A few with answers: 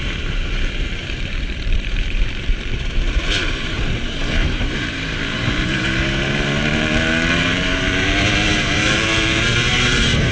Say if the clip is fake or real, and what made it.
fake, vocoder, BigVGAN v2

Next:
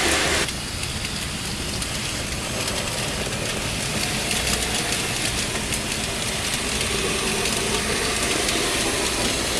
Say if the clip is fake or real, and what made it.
real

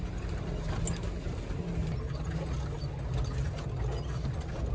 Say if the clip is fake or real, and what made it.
real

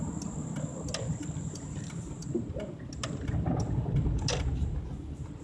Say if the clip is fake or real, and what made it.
real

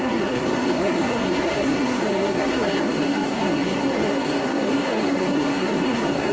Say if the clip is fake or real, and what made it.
fake, codec, SNAC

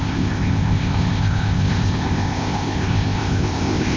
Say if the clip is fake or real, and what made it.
fake, codec, ZipCodec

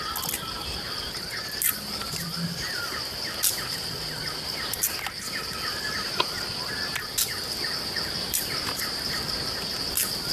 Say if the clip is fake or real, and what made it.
real